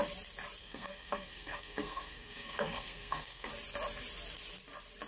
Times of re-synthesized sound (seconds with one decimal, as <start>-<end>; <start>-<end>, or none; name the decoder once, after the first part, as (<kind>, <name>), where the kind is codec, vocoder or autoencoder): 0.6-3.5 (codec, SNAC)